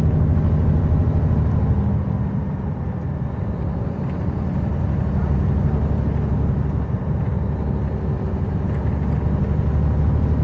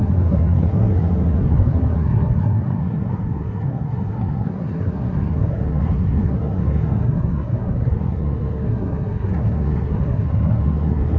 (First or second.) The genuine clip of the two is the first